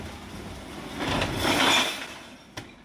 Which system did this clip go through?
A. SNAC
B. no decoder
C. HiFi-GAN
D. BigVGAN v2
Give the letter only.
B